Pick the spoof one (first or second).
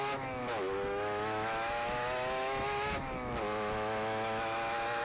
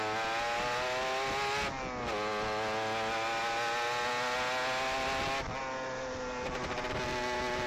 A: first